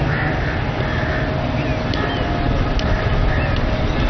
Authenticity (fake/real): real